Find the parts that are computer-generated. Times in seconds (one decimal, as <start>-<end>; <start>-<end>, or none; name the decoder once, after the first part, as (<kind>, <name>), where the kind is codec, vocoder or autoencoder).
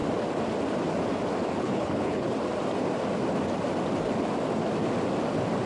1.6-2.3 (codec, HILCodec)